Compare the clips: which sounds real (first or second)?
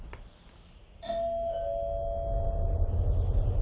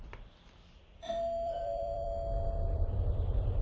first